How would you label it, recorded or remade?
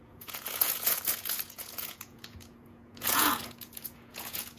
remade